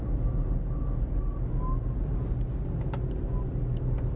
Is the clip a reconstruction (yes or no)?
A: no